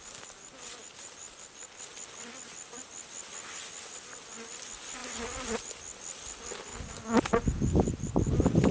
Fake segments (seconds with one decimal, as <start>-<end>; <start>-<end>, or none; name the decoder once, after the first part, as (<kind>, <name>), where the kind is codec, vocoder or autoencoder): none